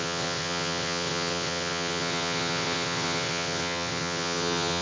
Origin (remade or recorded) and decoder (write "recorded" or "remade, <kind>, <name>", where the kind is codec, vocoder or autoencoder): remade, vocoder, WaveNeXt